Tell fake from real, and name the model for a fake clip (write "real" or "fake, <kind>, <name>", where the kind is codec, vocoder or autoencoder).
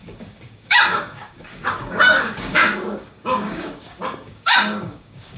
fake, codec, DAC